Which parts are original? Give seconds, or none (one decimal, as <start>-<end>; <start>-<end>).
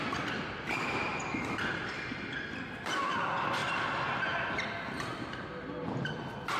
0.0-6.6